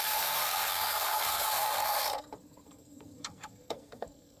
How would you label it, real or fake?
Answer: fake